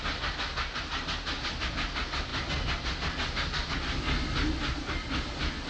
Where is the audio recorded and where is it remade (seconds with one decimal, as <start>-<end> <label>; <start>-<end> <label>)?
0.0-5.7 recorded